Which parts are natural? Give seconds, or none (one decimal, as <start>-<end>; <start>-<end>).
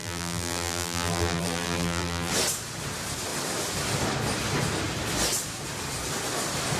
2.3-6.8